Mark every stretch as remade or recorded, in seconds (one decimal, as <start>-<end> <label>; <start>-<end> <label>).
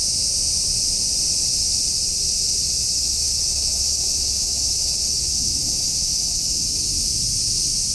0.0-3.0 recorded; 3.0-7.1 remade; 7.1-7.9 recorded